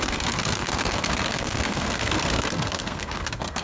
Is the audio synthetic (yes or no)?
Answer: yes